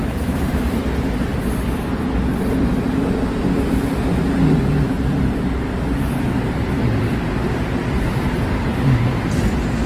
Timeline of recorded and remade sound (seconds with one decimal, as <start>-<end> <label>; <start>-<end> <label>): 0.0-1.3 remade; 1.3-4.9 recorded; 4.9-9.9 remade